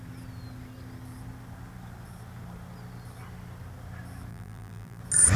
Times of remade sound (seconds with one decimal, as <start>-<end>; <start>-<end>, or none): 4.3-5.0